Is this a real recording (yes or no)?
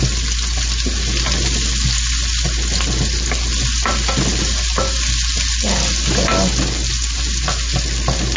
yes